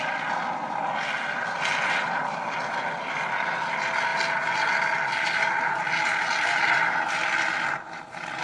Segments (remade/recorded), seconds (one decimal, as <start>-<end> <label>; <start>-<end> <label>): 0.0-8.4 recorded